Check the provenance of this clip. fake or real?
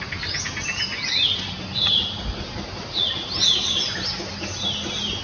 real